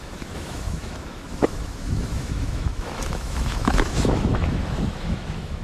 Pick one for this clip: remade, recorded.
remade